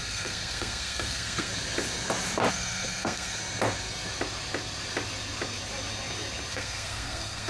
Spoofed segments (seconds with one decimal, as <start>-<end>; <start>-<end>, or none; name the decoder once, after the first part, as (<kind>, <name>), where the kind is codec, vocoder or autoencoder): 0.0-1.5 (codec, SNAC); 2.5-3.4; 6.5-7.5